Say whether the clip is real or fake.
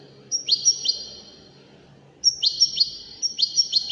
real